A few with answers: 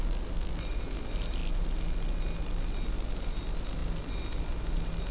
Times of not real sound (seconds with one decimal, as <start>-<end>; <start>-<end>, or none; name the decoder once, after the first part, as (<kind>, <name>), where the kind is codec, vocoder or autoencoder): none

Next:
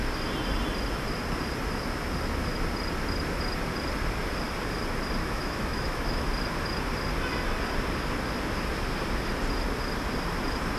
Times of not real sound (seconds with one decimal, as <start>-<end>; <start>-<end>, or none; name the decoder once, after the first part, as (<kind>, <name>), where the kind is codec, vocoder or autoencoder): 5.2-6.3 (autoencoder, DAC-VAE)

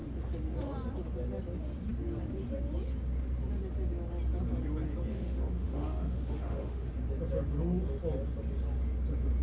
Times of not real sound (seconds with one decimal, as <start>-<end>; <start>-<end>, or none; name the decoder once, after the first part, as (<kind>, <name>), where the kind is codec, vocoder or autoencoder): 5.1-6.9 (autoencoder, DAC-VAE)

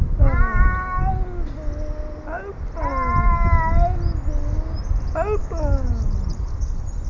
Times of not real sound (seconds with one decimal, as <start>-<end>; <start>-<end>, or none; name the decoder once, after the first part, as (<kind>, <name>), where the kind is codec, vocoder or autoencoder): 5.4-5.9 (autoencoder, DAC-VAE)

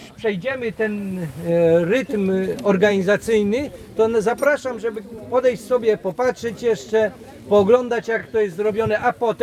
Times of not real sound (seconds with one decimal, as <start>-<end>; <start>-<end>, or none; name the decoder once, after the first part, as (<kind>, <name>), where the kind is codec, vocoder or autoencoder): 2.9-3.7 (autoencoder, DAC-VAE); 8.2-8.7

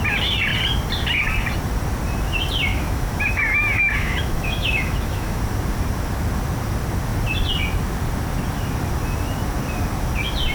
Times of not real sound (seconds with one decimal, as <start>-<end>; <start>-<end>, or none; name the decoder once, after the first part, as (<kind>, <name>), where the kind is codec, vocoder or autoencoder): 2.7-5.4 (autoencoder, DAC-VAE)